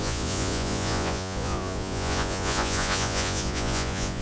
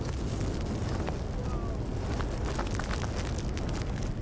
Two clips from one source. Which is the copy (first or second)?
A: first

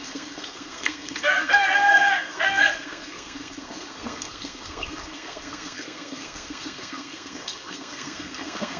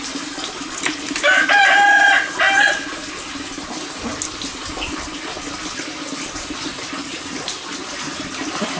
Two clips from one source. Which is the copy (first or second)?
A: first